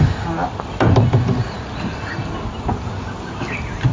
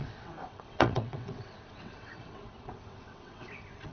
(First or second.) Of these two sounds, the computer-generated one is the second